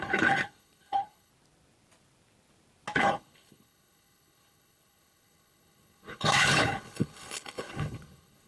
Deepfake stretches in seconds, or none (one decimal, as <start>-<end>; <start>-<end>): 0.0-1.3; 3.0-8.5